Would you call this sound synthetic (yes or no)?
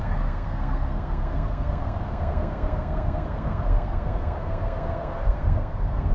yes